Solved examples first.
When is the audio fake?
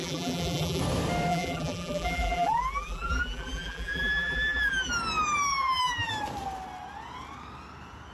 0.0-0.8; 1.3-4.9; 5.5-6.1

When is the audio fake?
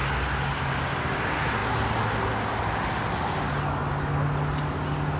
none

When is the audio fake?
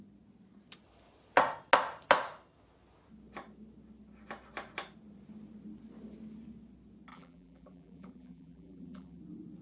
7.1-9.2